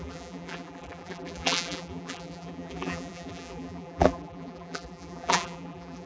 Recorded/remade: remade